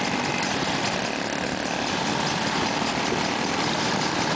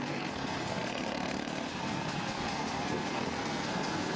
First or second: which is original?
first